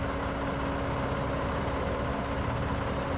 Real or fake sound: real